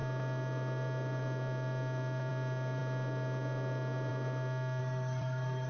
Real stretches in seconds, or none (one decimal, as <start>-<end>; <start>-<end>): 0.0-4.8